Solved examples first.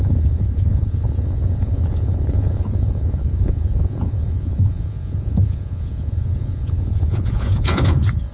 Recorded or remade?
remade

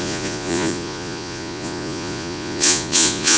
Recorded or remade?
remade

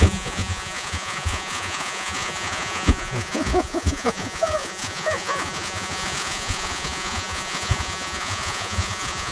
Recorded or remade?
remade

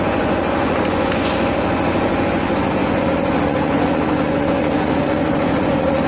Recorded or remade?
remade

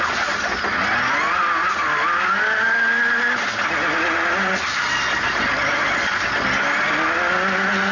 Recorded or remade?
recorded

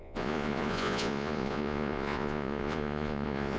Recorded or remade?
remade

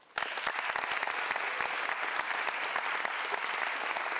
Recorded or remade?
recorded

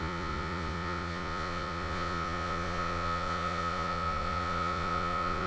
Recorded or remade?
remade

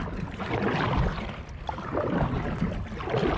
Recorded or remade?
recorded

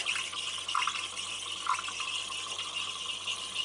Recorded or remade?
recorded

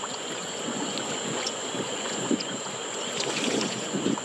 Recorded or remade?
remade